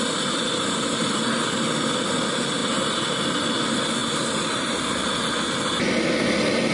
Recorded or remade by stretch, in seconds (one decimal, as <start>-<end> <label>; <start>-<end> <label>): 0.0-6.7 recorded